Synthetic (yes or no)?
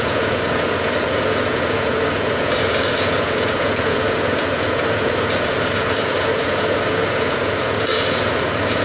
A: yes